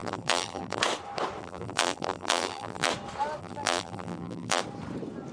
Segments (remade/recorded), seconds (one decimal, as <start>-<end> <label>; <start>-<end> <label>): 0.0-0.8 remade; 0.8-1.4 recorded; 1.4-2.9 remade; 2.9-3.4 recorded; 3.4-4.6 remade; 4.6-5.3 recorded